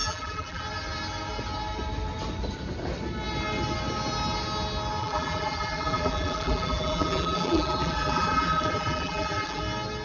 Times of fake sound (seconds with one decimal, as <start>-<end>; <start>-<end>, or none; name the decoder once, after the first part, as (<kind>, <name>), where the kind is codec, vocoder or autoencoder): 0.0-0.6 (vocoder, BigVGAN v2); 5.0-9.6